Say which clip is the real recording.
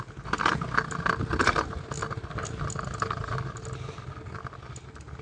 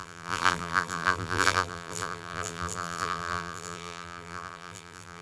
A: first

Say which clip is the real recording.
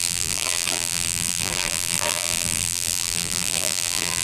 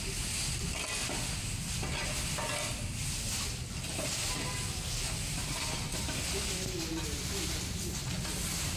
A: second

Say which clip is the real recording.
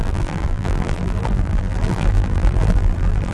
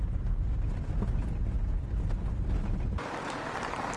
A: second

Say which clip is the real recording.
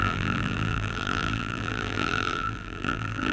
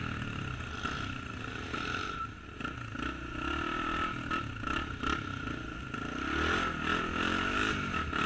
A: second